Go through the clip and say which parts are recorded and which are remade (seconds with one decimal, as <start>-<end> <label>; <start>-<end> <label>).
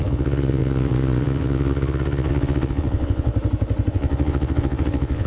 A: 0.0-3.3 remade; 3.3-3.9 recorded; 3.9-5.3 remade